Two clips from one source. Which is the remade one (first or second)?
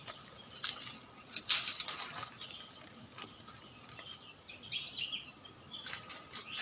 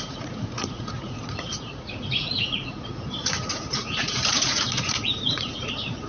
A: second